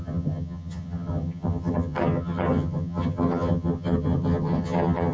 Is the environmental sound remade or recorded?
remade